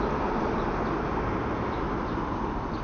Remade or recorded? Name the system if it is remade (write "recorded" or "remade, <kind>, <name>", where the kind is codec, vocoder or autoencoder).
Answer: recorded